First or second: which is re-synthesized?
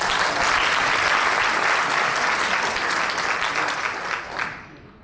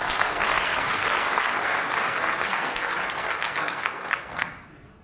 second